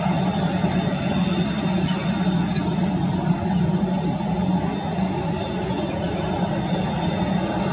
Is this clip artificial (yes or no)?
no